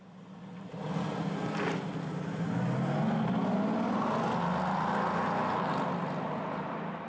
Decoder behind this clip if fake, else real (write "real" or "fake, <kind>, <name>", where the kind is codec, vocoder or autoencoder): real